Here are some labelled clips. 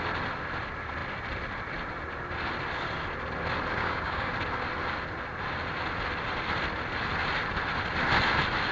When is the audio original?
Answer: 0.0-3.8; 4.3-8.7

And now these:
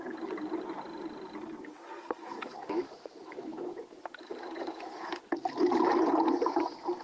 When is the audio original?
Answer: 0.0-2.2; 5.3-7.0